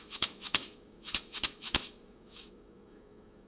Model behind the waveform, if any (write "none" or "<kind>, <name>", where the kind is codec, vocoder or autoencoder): autoencoder, DAC-VAE